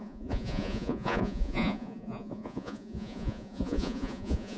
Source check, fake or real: fake